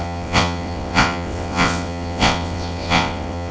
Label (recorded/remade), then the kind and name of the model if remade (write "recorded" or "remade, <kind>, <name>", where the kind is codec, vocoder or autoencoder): remade, vocoder, WaveNeXt